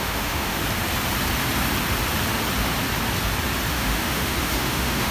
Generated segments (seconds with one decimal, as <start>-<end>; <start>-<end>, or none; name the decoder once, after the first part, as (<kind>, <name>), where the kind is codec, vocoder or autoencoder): 0.0-0.6 (autoencoder, DAC-VAE); 3.7-5.1